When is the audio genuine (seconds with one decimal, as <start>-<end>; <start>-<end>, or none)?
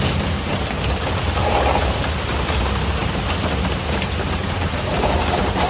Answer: 0.0-1.4; 2.6-3.0